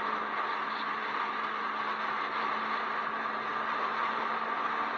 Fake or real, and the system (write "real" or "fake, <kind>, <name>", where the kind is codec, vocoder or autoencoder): real